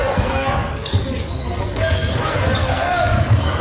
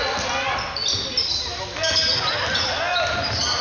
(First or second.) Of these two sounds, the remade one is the first